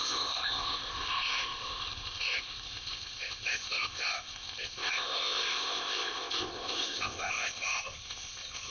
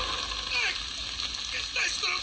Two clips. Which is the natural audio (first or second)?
second